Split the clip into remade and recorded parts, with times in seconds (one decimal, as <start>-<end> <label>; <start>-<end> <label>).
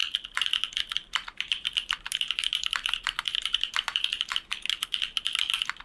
0.0-1.0 recorded; 1.0-4.5 remade; 4.5-5.8 recorded